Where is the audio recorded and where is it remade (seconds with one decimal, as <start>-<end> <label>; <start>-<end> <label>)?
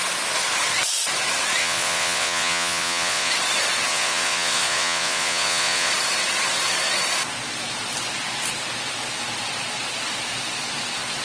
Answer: 0.0-1.6 recorded; 1.6-3.3 remade; 3.3-3.9 recorded; 3.9-5.9 remade; 5.9-11.2 recorded